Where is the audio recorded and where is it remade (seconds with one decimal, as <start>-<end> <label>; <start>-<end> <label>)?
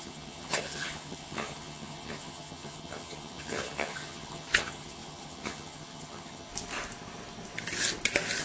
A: 0.0-6.5 remade; 6.5-8.4 recorded